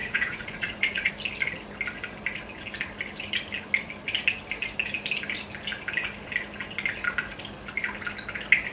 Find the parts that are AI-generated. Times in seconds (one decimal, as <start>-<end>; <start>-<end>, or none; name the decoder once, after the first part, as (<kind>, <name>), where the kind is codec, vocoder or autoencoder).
0.0-1.1 (vocoder, Vocos)